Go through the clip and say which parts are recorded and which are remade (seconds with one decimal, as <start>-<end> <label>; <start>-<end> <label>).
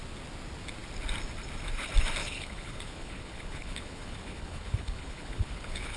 0.0-2.2 recorded; 2.2-6.0 remade